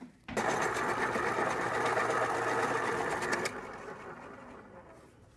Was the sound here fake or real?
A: real